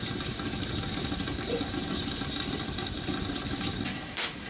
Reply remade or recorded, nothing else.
recorded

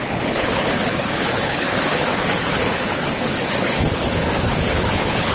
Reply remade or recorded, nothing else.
remade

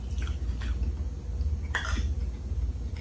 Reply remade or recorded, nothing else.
recorded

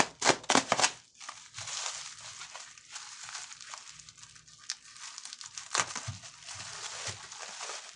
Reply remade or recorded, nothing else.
recorded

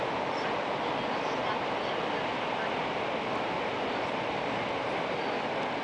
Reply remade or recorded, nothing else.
recorded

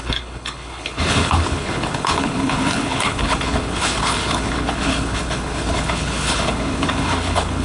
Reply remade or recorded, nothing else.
remade